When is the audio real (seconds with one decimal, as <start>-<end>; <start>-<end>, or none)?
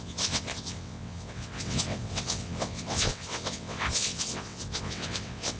none